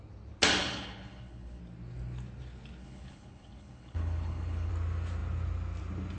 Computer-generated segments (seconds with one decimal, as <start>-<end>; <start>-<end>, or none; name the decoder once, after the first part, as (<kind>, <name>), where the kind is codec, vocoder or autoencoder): 0.6-1.6 (codec, HILCodec); 2.8-4.7